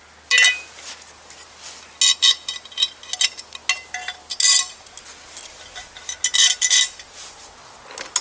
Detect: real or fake real